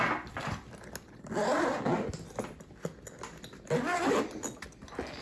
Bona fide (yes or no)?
yes